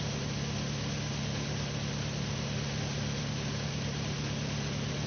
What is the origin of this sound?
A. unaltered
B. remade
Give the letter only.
A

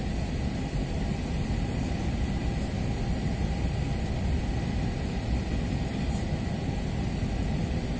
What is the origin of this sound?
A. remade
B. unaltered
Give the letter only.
B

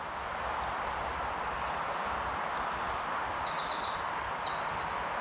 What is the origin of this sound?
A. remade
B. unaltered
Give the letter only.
B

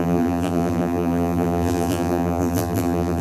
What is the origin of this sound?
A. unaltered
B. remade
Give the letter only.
B